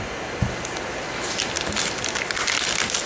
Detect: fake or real real